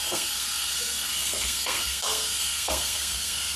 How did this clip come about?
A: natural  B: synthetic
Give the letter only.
B